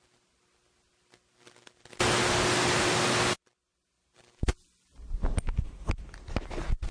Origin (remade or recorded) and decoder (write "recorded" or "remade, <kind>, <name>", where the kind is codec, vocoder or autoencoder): recorded